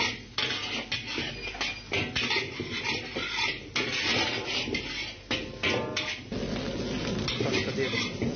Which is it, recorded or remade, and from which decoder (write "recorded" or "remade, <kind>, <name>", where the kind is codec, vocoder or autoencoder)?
recorded